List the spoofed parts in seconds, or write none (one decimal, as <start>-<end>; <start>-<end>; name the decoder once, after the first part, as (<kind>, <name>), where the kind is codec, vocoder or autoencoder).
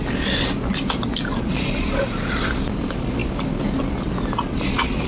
none